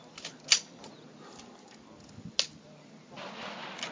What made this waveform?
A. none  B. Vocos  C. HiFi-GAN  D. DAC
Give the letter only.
A